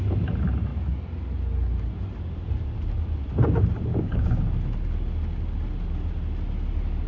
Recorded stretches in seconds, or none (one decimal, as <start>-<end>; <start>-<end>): 0.0-3.9; 4.4-7.1

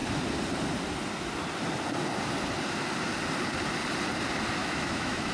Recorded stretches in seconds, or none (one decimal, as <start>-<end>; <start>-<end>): 0.0-4.6

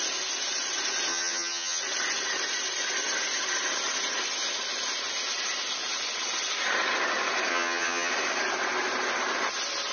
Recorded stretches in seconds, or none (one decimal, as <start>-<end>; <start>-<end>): 0.0-1.1; 1.8-7.5; 8.1-9.9

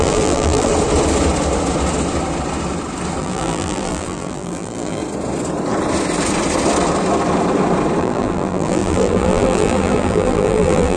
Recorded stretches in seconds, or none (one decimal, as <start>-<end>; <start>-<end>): 0.7-3.2; 5.0-8.0

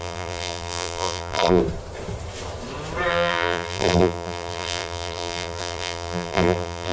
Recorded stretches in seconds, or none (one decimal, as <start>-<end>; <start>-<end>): 1.6-3.1

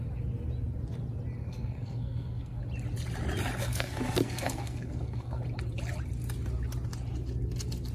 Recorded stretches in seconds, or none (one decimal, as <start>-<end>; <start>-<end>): 0.0-1.4; 2.6-3.6; 5.4-7.9